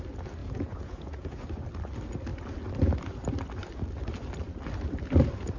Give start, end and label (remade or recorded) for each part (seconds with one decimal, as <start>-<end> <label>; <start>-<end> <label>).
0.0-0.4 recorded; 0.4-1.4 remade; 1.4-5.6 recorded